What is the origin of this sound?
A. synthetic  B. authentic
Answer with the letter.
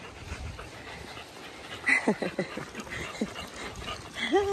B